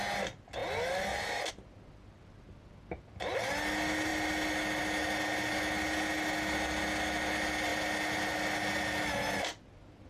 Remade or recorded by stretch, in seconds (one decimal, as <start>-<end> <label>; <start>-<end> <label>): 0.0-10.1 recorded